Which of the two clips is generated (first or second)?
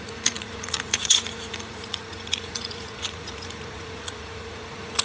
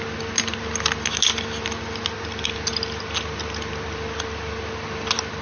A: first